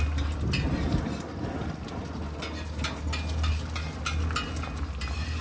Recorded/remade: recorded